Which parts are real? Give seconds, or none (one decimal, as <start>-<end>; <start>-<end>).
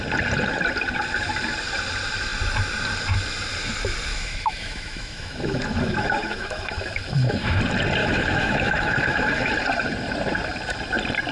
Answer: 0.0-4.1; 7.6-8.0; 9.5-11.3